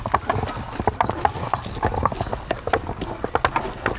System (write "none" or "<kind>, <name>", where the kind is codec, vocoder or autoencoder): none